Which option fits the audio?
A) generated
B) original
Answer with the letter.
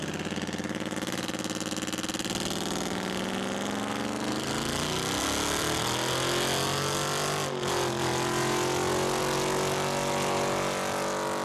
B